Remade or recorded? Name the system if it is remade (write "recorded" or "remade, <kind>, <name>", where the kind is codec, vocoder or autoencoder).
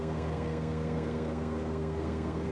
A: remade, codec, SNAC